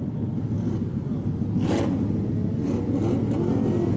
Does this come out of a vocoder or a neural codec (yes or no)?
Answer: no